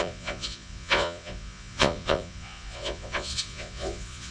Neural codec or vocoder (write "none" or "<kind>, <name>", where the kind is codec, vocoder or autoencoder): vocoder, Vocos